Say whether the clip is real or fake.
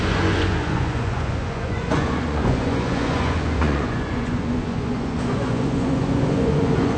fake